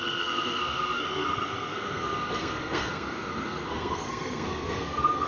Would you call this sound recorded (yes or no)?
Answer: no